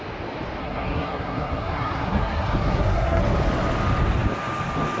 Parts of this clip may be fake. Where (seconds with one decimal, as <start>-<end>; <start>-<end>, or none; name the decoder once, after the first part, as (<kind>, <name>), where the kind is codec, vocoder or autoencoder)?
0.6-3.2 (codec, SNAC)